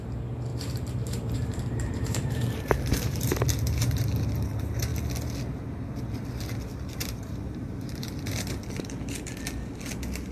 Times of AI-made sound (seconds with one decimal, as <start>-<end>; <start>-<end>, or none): 0.5-3.3; 6.7-8.3